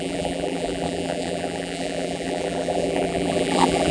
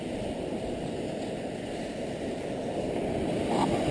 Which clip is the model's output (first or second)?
first